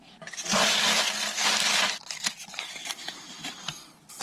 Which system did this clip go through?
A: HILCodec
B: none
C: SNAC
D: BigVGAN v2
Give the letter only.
B